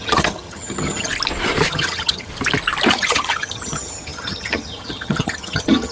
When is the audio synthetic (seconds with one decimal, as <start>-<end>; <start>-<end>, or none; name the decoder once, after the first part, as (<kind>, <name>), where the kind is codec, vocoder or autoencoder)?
0.0-1.1 (vocoder, HiFi-GAN); 1.7-2.3; 2.9-5.9